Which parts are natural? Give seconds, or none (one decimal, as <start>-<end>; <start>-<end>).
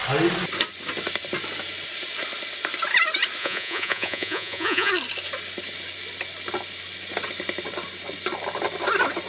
0.0-3.4; 4.9-9.3